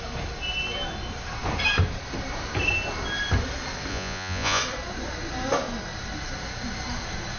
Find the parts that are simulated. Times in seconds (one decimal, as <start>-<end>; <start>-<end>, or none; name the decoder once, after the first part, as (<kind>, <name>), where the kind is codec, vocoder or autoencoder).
3.9-4.6 (vocoder, Vocos)